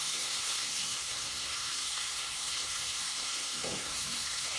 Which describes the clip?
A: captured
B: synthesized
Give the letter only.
B